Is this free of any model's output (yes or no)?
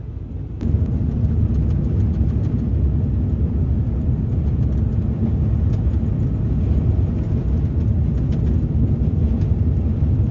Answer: yes